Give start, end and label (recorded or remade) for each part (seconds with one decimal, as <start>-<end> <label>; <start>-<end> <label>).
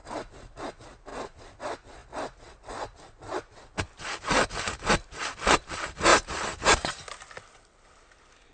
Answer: 0.0-6.1 recorded; 6.1-6.7 remade; 6.7-8.5 recorded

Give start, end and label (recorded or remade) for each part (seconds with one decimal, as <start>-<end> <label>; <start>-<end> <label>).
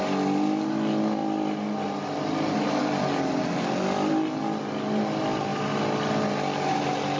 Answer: 0.0-7.2 recorded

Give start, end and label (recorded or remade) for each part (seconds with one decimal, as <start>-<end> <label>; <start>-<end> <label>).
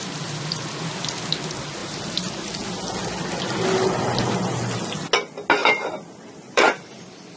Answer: 0.0-1.8 recorded; 1.8-2.5 remade; 2.5-5.6 recorded; 5.6-7.0 remade; 7.0-7.4 recorded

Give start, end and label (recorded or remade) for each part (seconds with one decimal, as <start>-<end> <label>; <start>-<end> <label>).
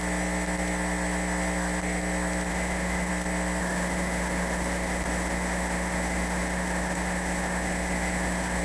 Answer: 0.0-2.5 recorded; 2.5-3.1 remade; 3.1-3.6 recorded; 3.6-8.6 remade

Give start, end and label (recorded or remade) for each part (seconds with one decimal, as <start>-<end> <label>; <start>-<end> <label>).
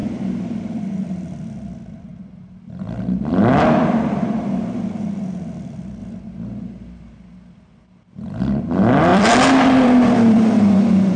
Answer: 0.0-2.1 remade; 2.1-3.0 recorded; 3.0-6.0 remade; 6.0-8.4 recorded; 8.4-11.2 remade